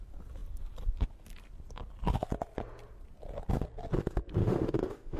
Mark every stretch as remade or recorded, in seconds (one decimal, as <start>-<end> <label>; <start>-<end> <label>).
0.0-4.4 recorded; 4.4-5.2 remade